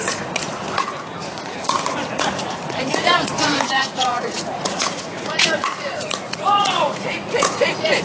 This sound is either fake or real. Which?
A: fake